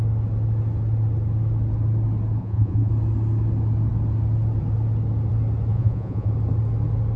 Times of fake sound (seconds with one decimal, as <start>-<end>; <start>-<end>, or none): 2.4-2.9; 5.7-6.3